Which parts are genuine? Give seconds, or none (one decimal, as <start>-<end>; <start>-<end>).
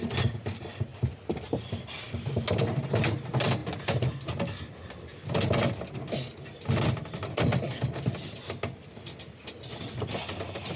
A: 0.0-10.8